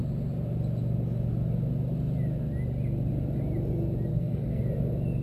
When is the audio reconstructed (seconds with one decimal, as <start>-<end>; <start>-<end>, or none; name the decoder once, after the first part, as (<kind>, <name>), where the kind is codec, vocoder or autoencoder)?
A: 4.1-4.6 (codec, SNAC)

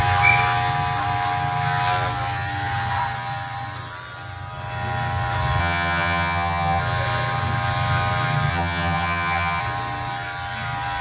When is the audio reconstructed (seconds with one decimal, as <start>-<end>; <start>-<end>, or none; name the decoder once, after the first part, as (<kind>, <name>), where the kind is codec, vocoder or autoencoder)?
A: 5.6-6.8 (vocoder, HiFi-GAN); 8.5-9.6

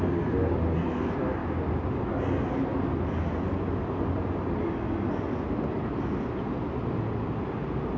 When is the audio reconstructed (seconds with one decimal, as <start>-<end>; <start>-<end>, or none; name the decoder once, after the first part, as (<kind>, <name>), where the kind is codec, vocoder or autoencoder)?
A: 1.4-2.0 (vocoder, BigVGAN v2)